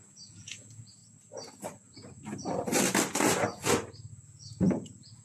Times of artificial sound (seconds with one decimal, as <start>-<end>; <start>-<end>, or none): 0.0-1.0; 4.1-5.2